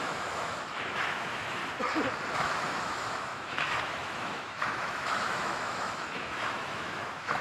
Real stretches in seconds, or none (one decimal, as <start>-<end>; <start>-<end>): 1.6-2.3